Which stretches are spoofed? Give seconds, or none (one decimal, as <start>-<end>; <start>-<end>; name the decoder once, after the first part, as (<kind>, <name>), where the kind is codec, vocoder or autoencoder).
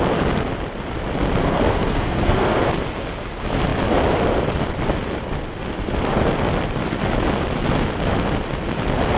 1.4-2.6 (codec, SNAC)